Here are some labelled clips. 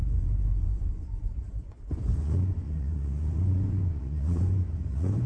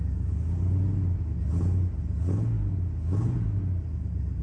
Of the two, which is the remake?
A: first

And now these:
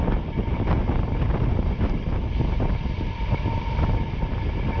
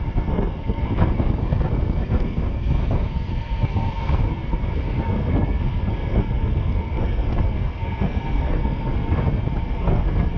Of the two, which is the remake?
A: second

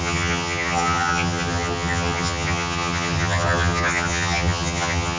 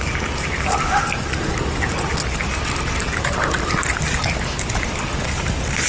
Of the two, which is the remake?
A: first